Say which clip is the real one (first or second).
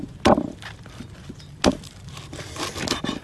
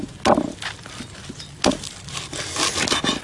second